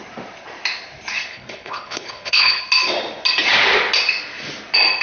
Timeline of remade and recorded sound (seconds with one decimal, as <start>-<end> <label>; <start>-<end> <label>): 0.0-1.3 recorded; 1.3-2.6 remade; 2.6-5.0 recorded